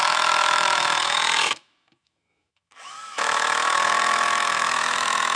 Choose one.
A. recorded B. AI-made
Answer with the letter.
B